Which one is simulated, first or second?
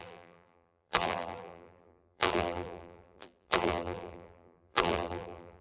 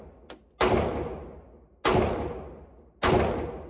first